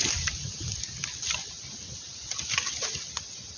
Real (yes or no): yes